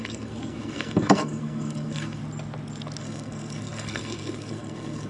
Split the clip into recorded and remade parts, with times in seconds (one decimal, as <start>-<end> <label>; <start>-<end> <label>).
0.0-2.2 remade; 2.2-3.0 recorded; 3.0-5.1 remade